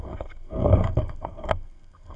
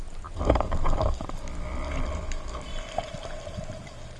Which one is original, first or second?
second